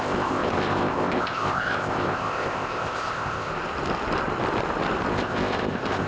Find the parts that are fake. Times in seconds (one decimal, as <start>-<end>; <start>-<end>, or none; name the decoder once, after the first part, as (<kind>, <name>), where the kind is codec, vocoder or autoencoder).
0.0-3.5 (codec, ZipCodec); 5.1-6.1